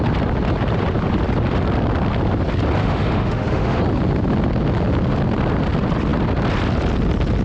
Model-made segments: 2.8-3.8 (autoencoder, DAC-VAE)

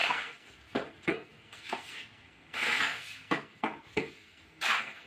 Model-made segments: 0.0-5.1 (codec, SNAC)

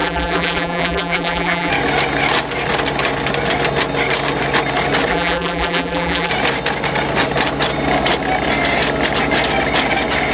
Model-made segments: 0.0-1.7 (vocoder, BigVGAN v2); 5.1-6.3

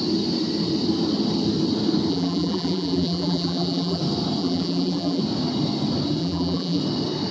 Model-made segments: 2.1-4.0 (vocoder, BigVGAN v2); 4.4-5.2; 6.2-6.8